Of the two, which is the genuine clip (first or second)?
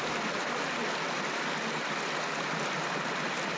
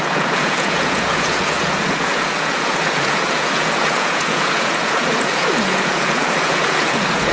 first